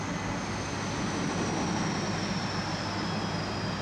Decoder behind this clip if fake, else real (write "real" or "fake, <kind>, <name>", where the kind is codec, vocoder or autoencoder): real